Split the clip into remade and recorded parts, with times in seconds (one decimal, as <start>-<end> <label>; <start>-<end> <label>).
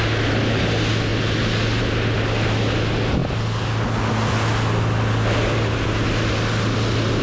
0.0-7.2 recorded